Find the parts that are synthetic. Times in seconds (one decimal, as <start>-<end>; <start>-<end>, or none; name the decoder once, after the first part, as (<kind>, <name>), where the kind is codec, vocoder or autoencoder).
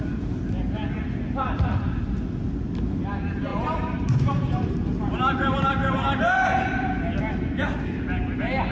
3.5-7.0 (vocoder, BigVGAN v2)